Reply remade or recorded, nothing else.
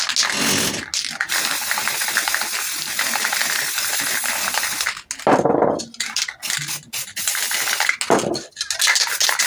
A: recorded